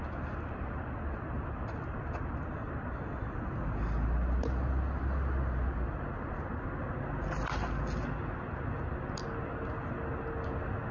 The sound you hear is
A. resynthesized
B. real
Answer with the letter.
B